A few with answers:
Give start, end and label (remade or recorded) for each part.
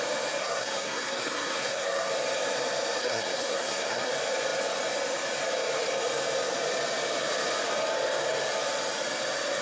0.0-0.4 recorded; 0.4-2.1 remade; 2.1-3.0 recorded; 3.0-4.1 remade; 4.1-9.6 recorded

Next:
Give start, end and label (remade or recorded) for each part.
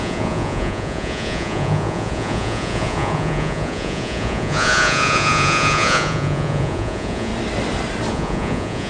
0.0-7.3 remade; 7.3-8.1 recorded; 8.1-8.9 remade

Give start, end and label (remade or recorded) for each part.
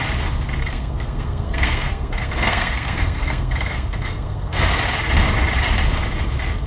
0.0-0.6 recorded; 0.6-4.6 remade; 4.6-6.7 recorded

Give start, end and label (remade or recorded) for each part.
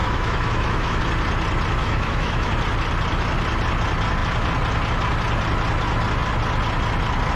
0.0-1.0 remade; 1.0-1.8 recorded; 1.8-2.5 remade; 2.5-7.3 recorded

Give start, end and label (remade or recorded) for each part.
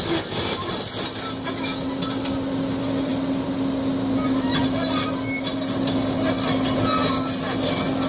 0.0-8.1 recorded